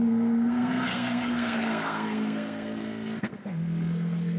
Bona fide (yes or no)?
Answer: no